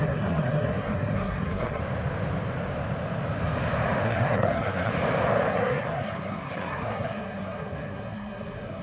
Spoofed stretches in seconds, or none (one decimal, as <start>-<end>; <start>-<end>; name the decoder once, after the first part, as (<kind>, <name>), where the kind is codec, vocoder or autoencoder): 0.0-1.8 (codec, SNAC); 4.0-4.9; 5.5-8.8